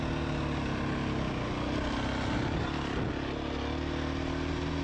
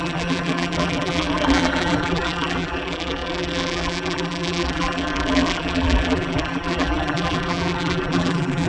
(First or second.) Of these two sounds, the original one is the first